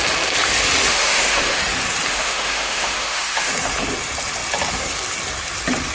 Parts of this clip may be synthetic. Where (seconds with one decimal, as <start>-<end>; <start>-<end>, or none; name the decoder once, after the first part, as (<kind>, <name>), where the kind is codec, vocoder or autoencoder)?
0.9-1.6 (autoencoder, DAC-VAE); 2.1-3.5